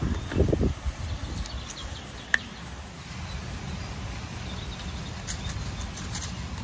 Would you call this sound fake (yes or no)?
no